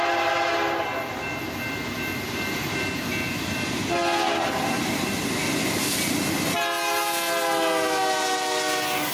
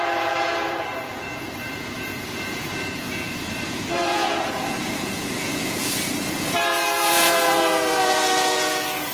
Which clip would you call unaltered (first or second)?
first